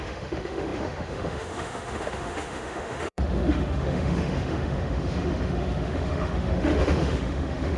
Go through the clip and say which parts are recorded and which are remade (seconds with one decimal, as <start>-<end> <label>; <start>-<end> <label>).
0.0-7.8 remade